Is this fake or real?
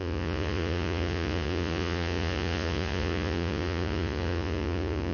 fake